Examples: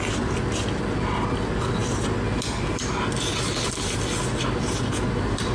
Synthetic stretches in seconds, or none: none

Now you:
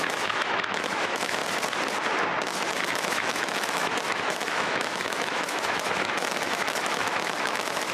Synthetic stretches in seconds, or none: 0.0-1.4 (autoencoder, DAC-VAE); 2.7-7.9

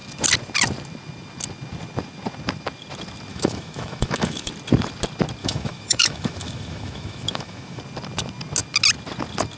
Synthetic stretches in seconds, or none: 3.3-4.5 (autoencoder, DAC-VAE); 5.4-7.8

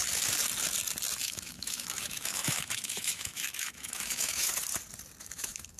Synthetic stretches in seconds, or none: 1.2-4.5 (autoencoder, DAC-VAE); 5.2-5.8

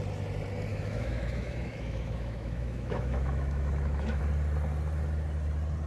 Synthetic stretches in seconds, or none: 0.7-4.2 (autoencoder, DAC-VAE)

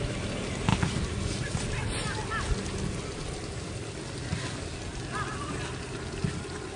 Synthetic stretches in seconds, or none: none

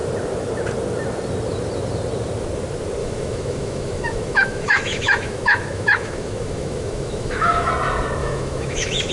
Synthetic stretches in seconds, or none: 3.0-7.7 (autoencoder, DAC-VAE); 8.2-9.1

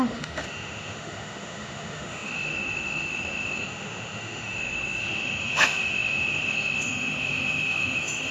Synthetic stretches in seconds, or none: 0.0-8.3 (autoencoder, DAC-VAE)